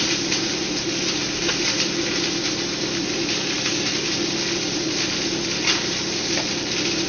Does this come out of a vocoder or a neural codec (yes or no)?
yes